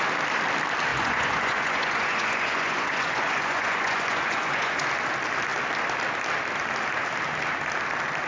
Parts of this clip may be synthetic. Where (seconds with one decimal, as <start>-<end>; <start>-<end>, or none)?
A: 0.9-4.8

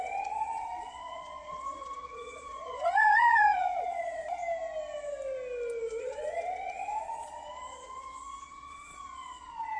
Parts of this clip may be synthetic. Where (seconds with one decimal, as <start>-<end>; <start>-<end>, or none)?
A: 0.0-4.4; 6.0-9.8

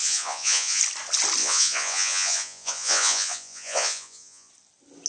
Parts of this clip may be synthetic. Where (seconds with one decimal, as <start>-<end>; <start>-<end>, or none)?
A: 0.0-0.8; 1.4-4.5

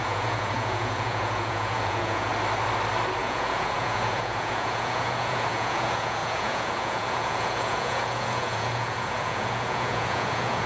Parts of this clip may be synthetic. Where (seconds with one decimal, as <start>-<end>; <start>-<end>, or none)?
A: 0.0-2.3; 3.2-10.7

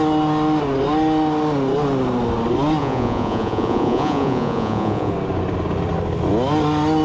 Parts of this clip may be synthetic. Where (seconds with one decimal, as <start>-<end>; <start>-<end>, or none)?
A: 2.8-5.1